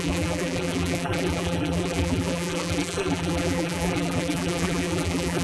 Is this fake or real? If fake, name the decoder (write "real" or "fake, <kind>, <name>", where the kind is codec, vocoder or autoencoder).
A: fake, vocoder, BigVGAN v2